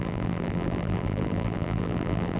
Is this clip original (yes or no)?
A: no